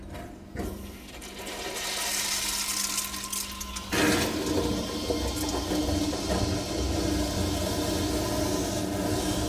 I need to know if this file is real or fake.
real